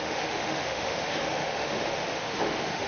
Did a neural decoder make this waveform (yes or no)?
yes